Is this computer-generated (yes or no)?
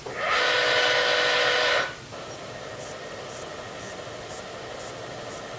no